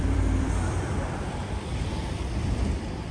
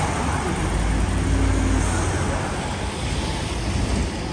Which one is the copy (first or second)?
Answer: first